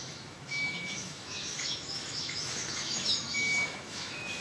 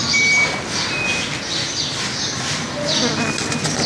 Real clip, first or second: second